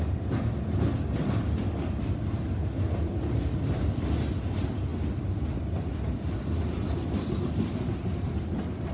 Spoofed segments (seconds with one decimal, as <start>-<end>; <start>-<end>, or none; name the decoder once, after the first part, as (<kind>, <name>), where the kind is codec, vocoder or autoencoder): none